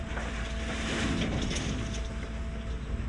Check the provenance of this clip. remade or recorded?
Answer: recorded